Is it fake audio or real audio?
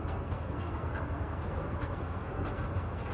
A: fake